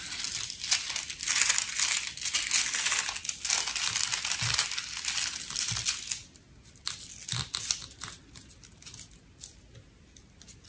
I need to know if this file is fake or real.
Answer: real